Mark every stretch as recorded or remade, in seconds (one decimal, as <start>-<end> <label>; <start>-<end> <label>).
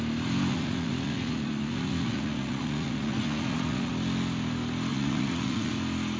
0.0-0.5 recorded; 0.5-3.9 remade; 3.9-4.9 recorded; 4.9-5.7 remade; 5.7-6.2 recorded